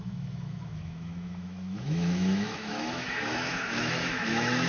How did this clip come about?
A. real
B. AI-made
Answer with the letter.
B